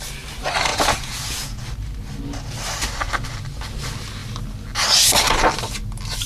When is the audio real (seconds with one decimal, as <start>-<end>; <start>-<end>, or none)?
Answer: 0.0-0.7; 1.6-6.3